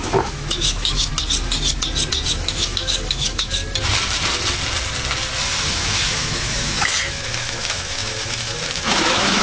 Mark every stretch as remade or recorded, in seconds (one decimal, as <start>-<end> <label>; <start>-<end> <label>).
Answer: 0.0-1.1 remade; 1.1-2.3 recorded; 2.3-3.6 remade; 3.6-5.7 recorded; 5.7-9.4 remade